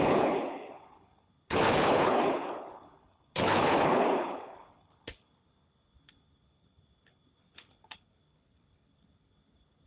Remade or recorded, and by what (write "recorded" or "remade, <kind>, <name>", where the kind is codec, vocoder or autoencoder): remade, codec, HILCodec